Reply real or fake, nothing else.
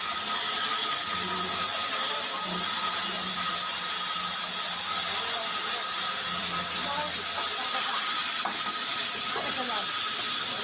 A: real